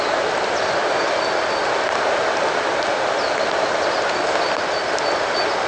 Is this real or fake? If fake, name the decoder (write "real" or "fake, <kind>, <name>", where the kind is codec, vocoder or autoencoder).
real